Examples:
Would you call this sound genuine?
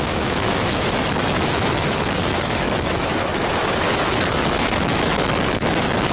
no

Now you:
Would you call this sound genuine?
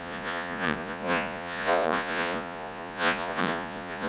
no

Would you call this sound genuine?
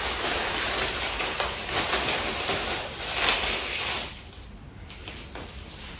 yes